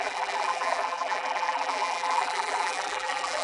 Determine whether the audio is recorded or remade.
remade